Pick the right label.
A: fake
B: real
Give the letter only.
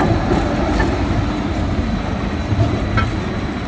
B